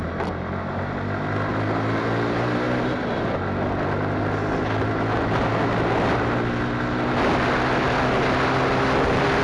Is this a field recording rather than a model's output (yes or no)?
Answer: yes